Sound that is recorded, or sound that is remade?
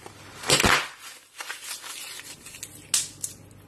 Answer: recorded